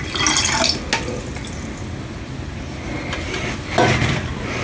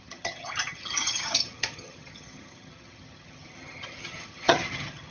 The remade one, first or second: second